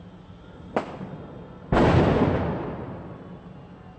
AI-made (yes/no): no